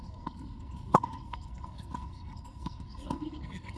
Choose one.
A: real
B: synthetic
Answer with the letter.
B